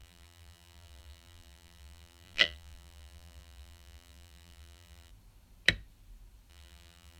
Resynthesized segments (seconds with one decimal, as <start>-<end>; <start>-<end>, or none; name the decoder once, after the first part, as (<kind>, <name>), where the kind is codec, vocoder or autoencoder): 0.0-5.1 (vocoder, BigVGAN v2); 6.5-7.2